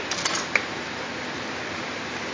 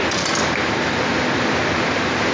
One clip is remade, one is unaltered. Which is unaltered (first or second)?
second